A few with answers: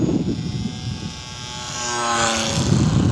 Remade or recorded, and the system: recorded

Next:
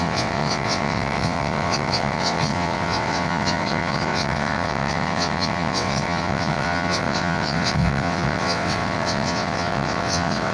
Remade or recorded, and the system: remade, vocoder, WaveNeXt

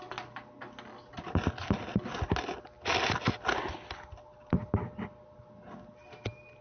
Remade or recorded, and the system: recorded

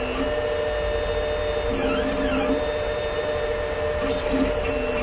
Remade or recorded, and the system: recorded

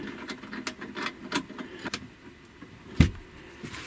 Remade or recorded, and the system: recorded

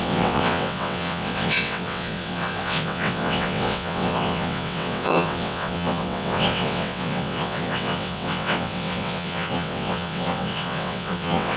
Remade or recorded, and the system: remade, vocoder, WaveNeXt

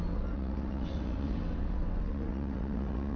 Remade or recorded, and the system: remade, vocoder, WaveNeXt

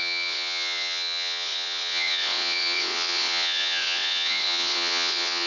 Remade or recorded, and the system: remade, vocoder, WaveNeXt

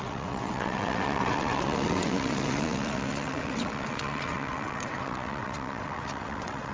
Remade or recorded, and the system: remade, vocoder, WaveNeXt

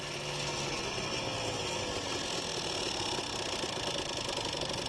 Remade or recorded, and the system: recorded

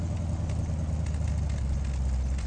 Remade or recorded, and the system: recorded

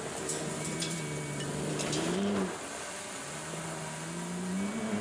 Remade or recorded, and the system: recorded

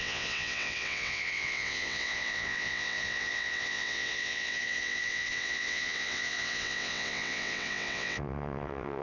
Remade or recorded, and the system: remade, vocoder, WaveNeXt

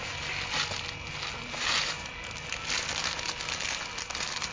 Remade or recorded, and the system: recorded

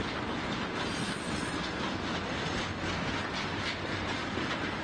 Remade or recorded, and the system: recorded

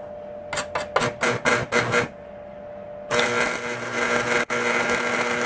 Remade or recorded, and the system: recorded